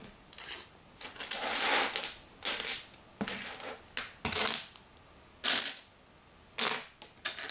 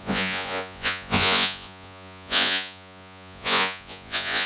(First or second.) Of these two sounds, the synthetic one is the second